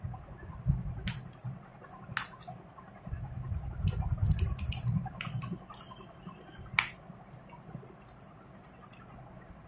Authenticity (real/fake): real